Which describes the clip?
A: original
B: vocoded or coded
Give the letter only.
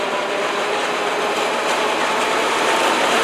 B